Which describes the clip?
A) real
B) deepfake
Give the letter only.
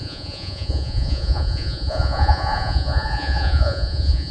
B